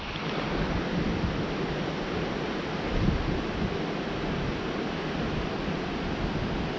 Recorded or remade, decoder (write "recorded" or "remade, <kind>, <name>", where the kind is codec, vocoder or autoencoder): recorded